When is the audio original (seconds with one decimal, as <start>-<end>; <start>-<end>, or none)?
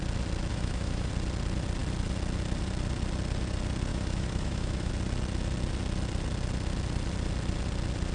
0.0-0.5; 1.1-3.9; 4.9-8.1